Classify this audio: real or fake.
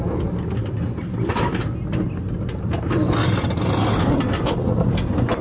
real